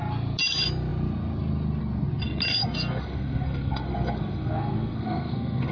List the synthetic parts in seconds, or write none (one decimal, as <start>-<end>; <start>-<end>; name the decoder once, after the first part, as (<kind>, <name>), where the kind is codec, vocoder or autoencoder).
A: 2.6-5.7 (codec, SNAC)